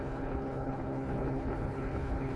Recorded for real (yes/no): no